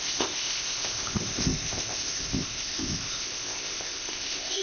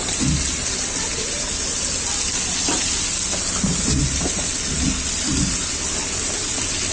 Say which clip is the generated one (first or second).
first